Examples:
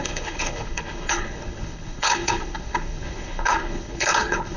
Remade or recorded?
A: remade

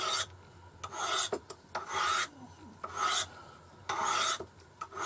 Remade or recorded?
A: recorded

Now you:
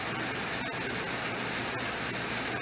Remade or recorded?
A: recorded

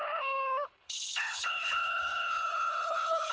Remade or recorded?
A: remade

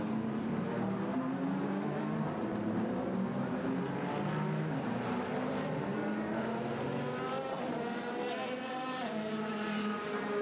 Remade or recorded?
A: recorded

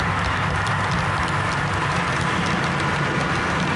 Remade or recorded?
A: recorded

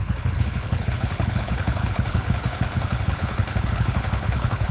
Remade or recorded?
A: remade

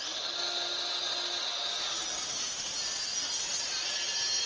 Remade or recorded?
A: recorded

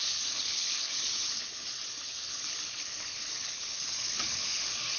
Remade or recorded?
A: remade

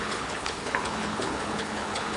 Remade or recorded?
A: remade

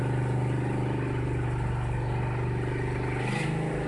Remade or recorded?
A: recorded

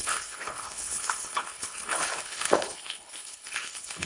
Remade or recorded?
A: remade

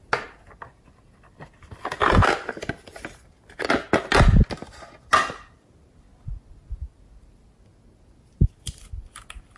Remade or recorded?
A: recorded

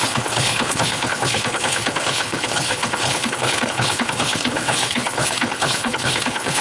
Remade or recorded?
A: remade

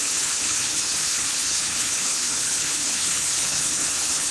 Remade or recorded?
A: remade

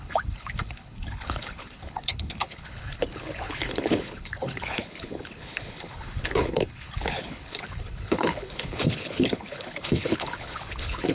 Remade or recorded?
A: remade